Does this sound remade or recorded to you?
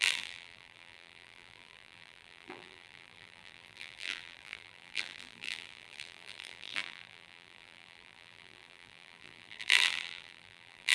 remade